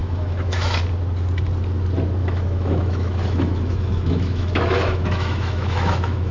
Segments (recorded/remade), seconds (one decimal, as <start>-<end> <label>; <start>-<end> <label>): 0.0-0.8 remade; 0.8-2.2 recorded; 2.2-6.3 remade